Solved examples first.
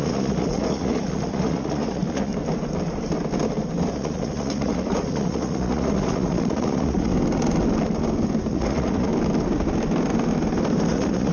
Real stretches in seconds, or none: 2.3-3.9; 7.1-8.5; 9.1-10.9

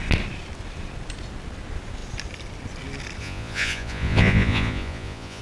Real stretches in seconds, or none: 0.0-3.2